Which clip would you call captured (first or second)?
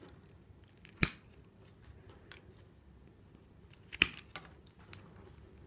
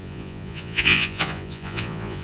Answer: first